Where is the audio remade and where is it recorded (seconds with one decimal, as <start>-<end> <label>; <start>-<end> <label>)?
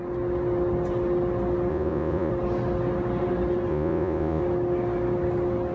0.0-1.7 recorded; 1.7-2.3 remade; 2.3-3.7 recorded; 3.7-4.4 remade; 4.4-5.7 recorded